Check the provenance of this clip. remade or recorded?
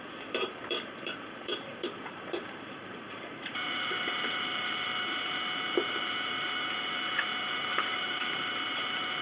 remade